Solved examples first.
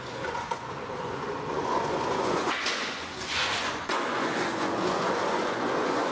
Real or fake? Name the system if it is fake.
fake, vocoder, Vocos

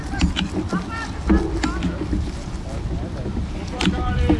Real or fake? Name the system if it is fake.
real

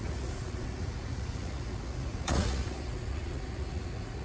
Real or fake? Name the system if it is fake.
fake, vocoder, Vocos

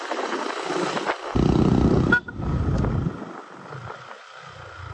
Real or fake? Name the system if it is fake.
real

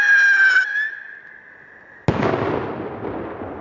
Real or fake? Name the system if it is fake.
real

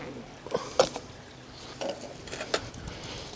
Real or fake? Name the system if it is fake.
real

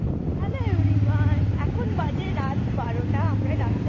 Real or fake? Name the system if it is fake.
real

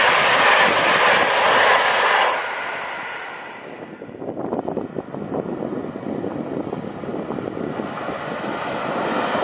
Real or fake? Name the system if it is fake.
real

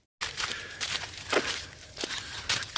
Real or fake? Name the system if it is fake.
real